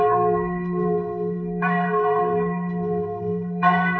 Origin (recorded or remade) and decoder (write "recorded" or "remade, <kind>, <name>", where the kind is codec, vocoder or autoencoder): remade, codec, SNAC